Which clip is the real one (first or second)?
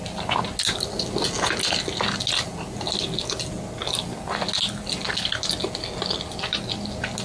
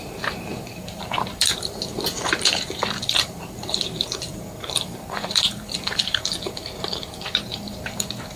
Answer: first